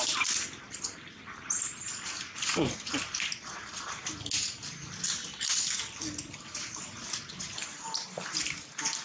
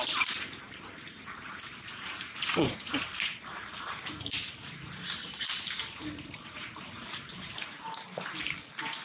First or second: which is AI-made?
second